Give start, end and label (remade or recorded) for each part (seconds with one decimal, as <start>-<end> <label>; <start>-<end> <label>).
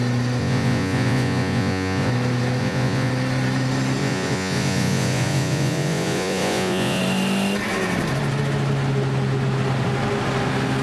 0.0-0.4 recorded; 0.4-2.1 remade; 2.1-2.6 recorded; 2.6-3.1 remade; 3.1-4.0 recorded; 4.0-7.0 remade; 7.0-10.8 recorded